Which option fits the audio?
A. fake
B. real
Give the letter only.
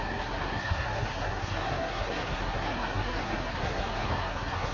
A